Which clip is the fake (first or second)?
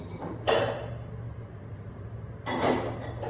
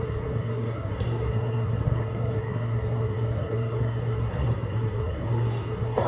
second